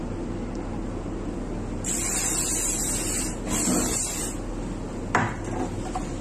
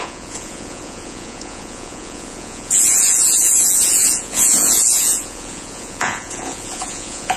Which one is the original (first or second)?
first